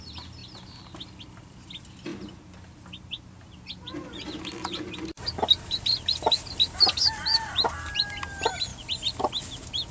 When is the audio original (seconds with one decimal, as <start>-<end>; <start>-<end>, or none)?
0.0-9.9